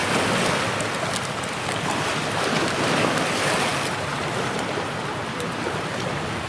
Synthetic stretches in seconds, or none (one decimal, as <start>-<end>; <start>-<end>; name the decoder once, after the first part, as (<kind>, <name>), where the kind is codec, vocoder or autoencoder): none